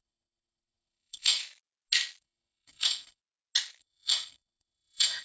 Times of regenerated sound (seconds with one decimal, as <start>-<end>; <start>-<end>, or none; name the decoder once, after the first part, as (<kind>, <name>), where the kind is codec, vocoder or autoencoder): 0.0-1.4 (codec, SNAC); 2.2-3.2; 3.8-5.2